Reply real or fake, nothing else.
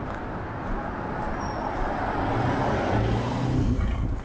real